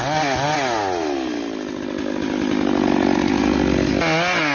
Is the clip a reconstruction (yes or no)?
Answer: no